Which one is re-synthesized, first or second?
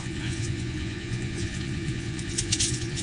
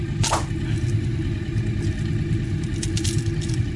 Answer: first